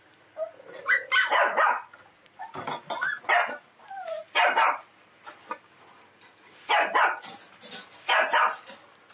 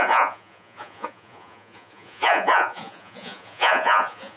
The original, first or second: first